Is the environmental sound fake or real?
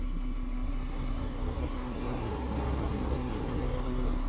fake